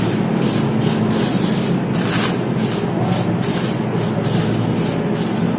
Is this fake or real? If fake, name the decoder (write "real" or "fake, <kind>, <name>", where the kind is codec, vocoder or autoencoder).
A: real